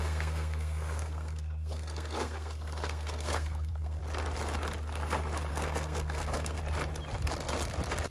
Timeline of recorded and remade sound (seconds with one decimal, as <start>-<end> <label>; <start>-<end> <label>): 0.0-4.0 remade; 4.0-5.5 recorded; 5.5-6.6 remade; 6.6-8.1 recorded